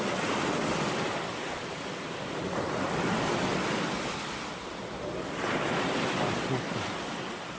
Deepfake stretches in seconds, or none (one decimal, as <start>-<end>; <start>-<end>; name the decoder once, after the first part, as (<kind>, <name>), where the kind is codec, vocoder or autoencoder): none